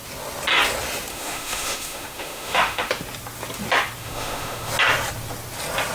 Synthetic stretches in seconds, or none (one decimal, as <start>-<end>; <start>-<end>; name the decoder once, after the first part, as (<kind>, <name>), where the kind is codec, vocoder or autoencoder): 1.1-2.9 (autoencoder, DAC-VAE); 4.0-4.7